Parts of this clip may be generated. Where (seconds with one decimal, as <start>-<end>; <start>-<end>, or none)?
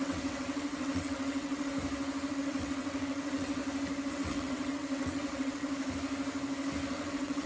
0.0-1.7; 2.3-3.6; 4.1-5.7; 6.9-7.5